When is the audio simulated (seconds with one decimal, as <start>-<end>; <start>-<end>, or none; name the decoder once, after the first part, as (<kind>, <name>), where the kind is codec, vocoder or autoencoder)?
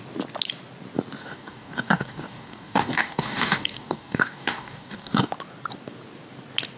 1.2-5.3 (codec, DAC)